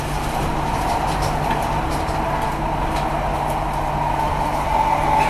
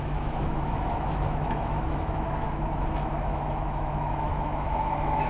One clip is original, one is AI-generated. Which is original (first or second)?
first